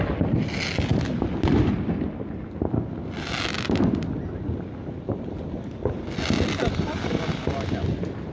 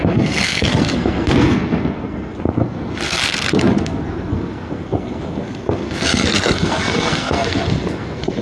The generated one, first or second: second